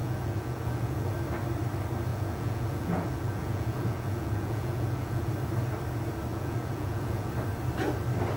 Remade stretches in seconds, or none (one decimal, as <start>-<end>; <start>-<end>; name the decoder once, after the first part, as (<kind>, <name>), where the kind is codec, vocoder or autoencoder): 0.0-1.1 (vocoder, Vocos); 2.1-5.3; 6.3-7.3